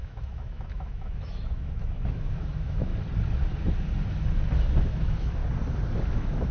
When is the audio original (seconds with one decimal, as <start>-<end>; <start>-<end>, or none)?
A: 2.9-4.8; 5.4-6.1